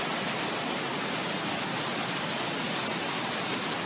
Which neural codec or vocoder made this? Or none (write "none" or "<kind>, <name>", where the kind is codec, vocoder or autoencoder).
none